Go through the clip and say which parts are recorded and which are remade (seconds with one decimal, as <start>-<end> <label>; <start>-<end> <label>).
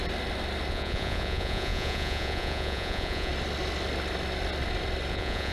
0.0-0.7 recorded; 0.7-3.3 remade; 3.3-5.1 recorded; 5.1-5.5 remade